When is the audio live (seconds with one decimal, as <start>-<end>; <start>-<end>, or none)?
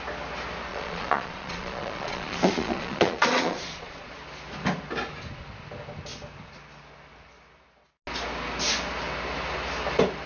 0.0-0.7; 4.1-10.3